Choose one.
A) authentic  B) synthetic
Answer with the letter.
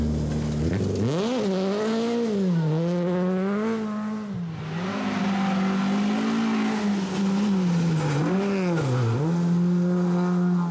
A